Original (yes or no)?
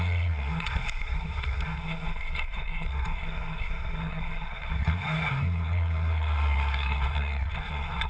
no